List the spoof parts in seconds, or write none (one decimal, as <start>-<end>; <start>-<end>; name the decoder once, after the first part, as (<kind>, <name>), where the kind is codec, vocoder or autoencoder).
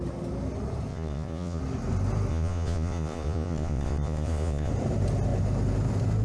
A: 0.9-1.6 (vocoder, Vocos); 2.3-4.7